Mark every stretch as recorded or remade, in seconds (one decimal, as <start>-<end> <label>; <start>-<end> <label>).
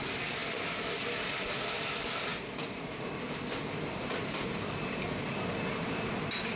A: 0.0-2.3 recorded; 2.3-3.0 remade; 3.0-6.6 recorded